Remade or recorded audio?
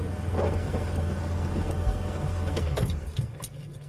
remade